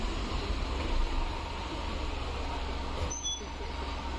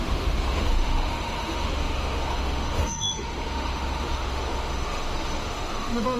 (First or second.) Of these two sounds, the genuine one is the first